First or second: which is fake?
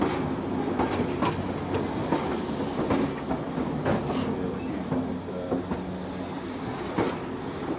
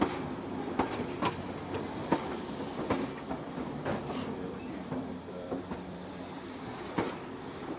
second